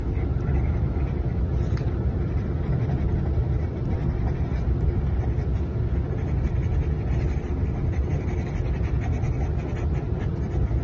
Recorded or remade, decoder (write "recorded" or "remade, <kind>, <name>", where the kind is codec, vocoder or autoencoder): remade, vocoder, BigVGAN v2